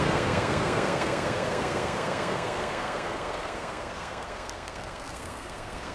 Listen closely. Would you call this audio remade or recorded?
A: remade